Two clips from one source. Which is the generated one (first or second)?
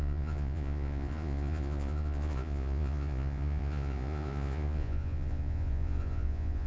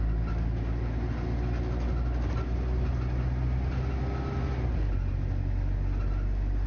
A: first